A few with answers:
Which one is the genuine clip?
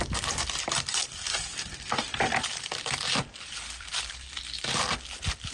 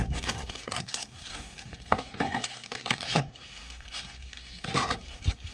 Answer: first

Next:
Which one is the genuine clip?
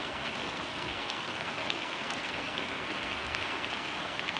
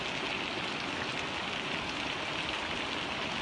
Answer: second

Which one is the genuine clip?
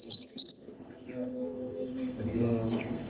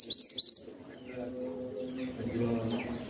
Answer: second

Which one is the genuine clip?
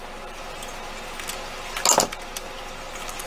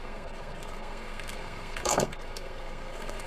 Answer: first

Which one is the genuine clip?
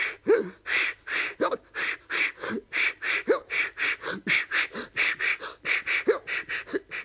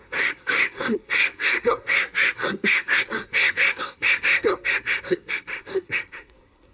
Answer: first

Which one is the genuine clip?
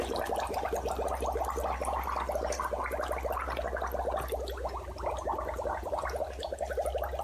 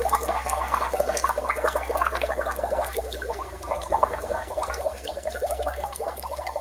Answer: first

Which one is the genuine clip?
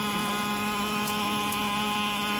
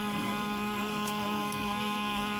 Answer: first